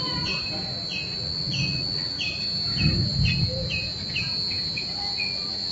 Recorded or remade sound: recorded